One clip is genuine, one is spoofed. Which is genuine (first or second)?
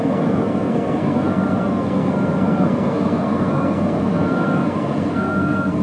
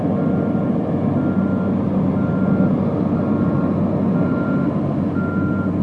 second